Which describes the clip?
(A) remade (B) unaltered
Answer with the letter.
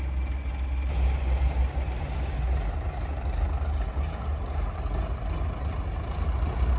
B